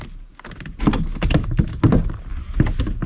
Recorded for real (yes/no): yes